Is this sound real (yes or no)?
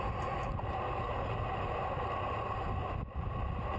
yes